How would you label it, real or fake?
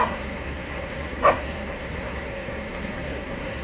fake